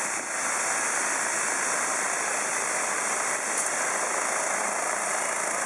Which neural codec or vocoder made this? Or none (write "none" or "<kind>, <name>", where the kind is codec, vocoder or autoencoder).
none